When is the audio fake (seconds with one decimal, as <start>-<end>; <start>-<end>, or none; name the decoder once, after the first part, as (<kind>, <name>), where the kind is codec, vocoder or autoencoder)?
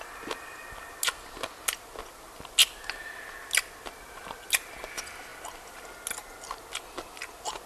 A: none